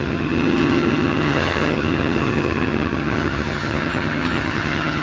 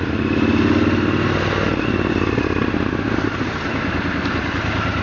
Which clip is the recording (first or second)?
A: second